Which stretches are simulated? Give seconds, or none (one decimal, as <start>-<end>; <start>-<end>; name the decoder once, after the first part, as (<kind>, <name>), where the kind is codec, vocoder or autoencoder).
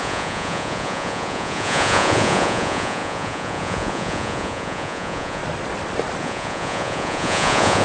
0.0-5.4 (vocoder, Vocos); 6.2-7.8